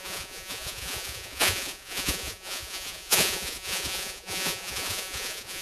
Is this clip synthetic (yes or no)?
yes